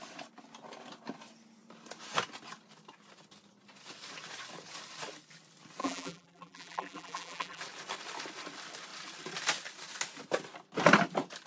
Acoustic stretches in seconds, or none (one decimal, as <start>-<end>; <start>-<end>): 0.0-5.8; 7.6-11.5